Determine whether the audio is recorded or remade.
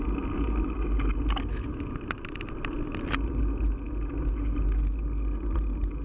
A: recorded